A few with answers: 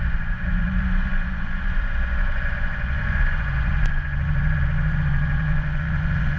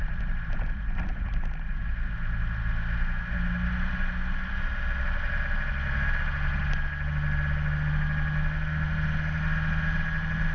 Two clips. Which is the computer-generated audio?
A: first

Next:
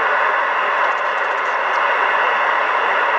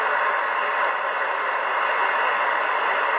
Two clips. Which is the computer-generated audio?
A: first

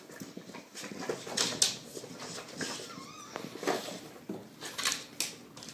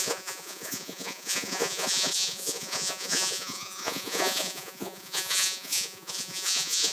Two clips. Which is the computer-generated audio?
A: second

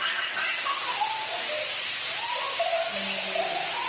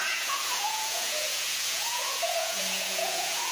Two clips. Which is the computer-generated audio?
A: second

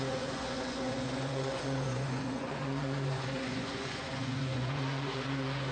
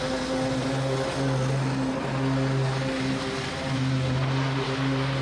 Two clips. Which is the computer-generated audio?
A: first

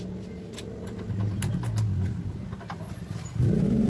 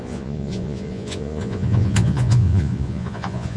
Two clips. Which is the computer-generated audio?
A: second